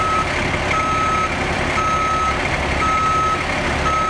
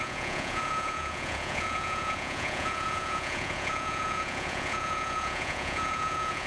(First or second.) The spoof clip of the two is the second